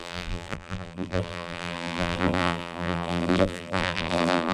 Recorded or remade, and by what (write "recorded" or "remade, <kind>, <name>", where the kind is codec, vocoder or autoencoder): remade, vocoder, BigVGAN v2